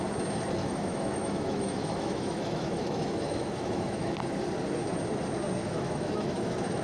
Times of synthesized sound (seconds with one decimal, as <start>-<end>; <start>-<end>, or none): 0.6-4.1; 5.6-6.8